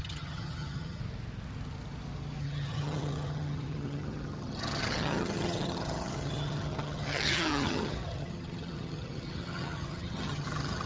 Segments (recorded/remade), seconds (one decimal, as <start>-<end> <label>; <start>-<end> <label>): 0.0-1.0 remade; 1.0-2.4 recorded; 2.4-10.9 remade